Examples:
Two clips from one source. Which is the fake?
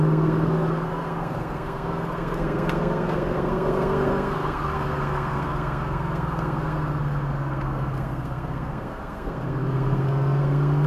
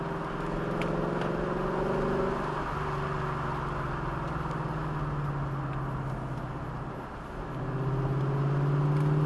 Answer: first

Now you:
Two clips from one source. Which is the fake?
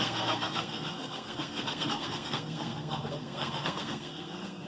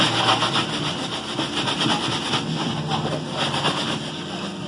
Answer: first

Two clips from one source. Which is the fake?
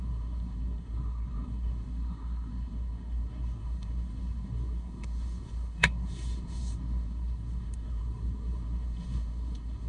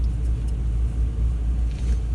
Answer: first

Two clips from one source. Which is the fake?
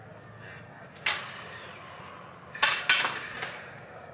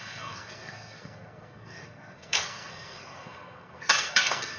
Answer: second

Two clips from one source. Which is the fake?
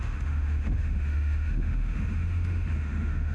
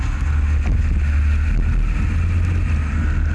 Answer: first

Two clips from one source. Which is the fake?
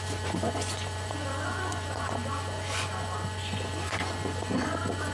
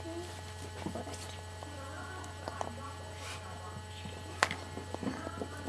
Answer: first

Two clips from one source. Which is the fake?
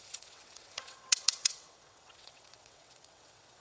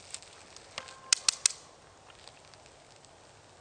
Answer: first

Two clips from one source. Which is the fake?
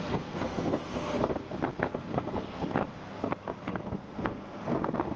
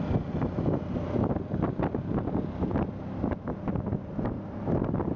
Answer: first